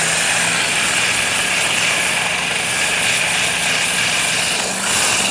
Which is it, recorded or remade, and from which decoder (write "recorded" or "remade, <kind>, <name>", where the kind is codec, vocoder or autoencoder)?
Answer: recorded